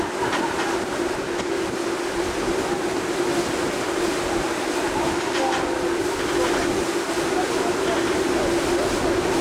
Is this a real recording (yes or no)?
yes